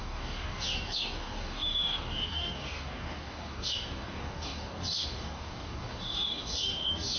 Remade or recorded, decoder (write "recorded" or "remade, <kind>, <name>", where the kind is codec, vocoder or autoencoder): remade, codec, DAC